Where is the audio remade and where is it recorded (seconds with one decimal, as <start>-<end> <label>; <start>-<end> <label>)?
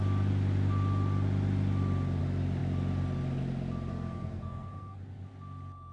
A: 0.0-3.9 recorded; 3.9-5.0 remade; 5.0-5.9 recorded